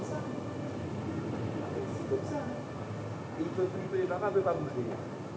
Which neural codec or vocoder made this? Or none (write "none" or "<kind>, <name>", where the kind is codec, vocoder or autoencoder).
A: none